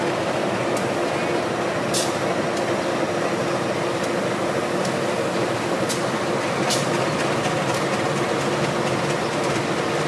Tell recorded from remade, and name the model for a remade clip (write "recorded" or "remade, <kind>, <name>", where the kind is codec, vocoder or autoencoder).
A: recorded